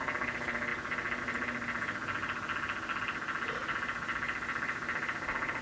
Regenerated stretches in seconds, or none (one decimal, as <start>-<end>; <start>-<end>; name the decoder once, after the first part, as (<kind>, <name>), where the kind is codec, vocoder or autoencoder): 3.6-5.6 (vocoder, BigVGAN v2)